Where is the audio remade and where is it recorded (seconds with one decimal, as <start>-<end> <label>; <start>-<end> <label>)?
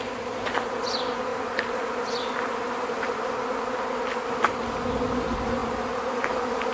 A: 0.0-6.7 recorded